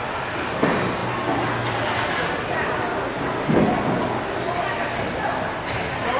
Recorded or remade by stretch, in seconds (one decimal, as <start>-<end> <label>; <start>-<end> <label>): 0.0-6.2 recorded